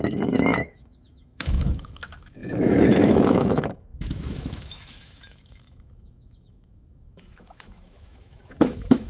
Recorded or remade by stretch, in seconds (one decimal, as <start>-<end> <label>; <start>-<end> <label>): 0.0-9.1 remade